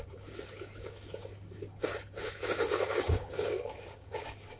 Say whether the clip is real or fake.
fake